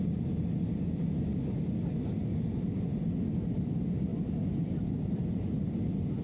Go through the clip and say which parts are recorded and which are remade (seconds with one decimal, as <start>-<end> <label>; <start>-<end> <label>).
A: 0.0-6.2 recorded